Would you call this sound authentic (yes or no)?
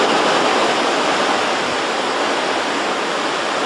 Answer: yes